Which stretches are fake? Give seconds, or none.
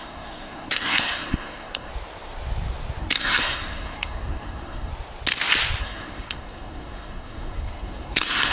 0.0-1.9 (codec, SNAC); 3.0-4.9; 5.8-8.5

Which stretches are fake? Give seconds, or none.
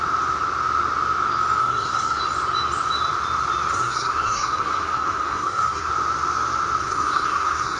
1.6-2.2 (codec, SNAC); 3.7-5.9; 6.8-7.8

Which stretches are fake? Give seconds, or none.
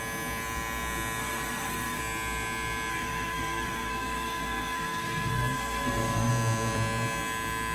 1.2-2.0 (codec, SNAC); 2.9-6.3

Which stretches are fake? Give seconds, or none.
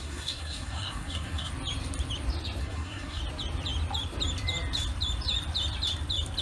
0.0-1.5 (codec, SNAC); 2.6-3.2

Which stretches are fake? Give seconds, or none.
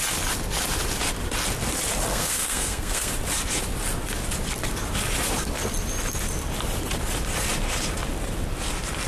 2.1-3.1 (codec, SNAC)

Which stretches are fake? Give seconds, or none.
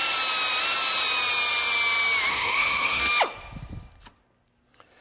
2.3-3.0 (codec, SNAC)